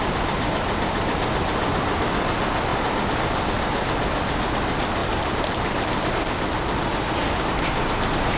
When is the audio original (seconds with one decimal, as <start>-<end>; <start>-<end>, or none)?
0.0-8.4